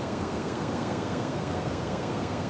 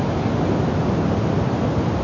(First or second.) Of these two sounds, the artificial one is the first